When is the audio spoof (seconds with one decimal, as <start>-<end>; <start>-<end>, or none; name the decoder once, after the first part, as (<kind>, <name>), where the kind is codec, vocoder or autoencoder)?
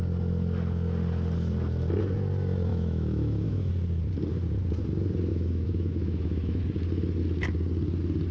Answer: 2.7-3.7 (autoencoder, DAC-VAE); 5.3-6.6